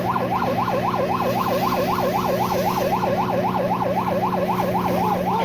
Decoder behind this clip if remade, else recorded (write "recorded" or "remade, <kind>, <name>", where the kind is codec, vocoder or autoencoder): recorded